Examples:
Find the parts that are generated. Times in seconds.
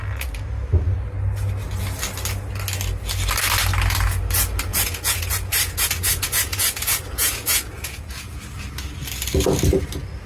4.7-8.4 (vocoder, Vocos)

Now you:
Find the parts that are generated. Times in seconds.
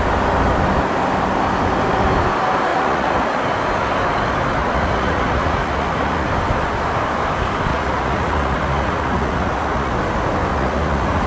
2.7-3.4 (vocoder, Vocos); 4.6-6.3; 7.7-9.9; 10.5-11.3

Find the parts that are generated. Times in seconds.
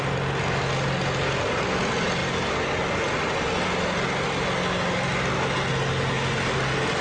none